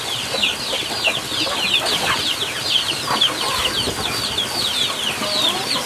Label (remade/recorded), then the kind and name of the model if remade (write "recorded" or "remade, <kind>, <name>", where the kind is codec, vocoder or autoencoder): recorded